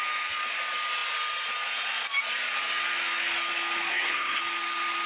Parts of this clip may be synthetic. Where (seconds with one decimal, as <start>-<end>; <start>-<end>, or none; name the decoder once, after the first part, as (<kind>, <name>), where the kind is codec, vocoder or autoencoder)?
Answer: 3.9-4.4 (codec, SNAC)